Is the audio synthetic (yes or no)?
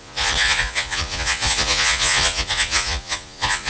yes